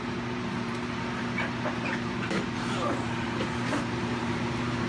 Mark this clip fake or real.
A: fake